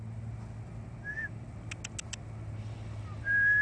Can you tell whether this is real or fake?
real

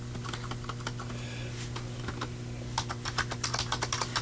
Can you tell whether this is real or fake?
real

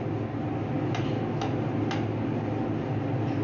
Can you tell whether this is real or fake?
real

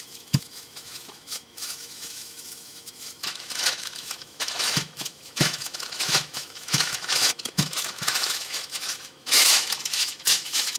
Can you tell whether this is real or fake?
fake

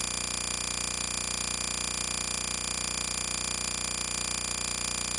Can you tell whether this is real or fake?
real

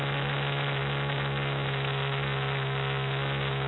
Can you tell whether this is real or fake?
real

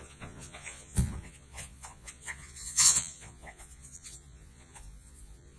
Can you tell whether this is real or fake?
fake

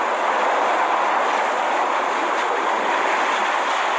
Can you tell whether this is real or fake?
real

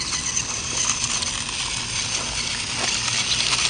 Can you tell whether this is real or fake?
real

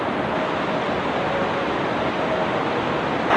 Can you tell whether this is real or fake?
real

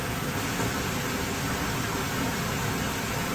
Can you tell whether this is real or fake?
real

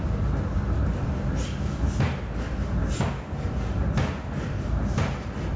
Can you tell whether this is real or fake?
real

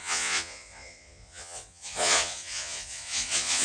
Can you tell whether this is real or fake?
fake